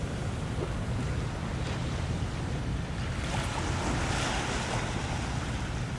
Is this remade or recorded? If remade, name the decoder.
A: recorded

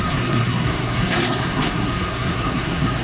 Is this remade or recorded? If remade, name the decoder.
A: remade, codec, SNAC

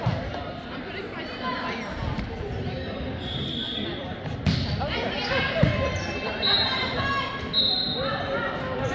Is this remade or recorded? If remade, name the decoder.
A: recorded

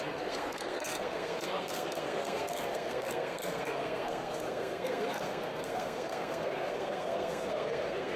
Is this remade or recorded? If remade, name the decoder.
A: remade, codec, SNAC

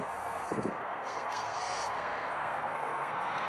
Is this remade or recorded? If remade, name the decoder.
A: remade, codec, SNAC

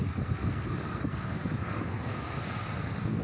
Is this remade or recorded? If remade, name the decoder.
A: remade, codec, SNAC